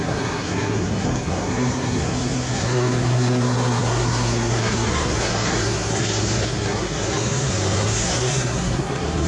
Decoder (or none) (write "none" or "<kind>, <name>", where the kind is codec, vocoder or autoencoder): codec, SNAC